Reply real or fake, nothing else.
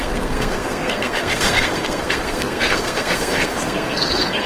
fake